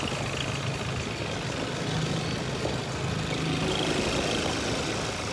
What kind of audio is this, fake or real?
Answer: real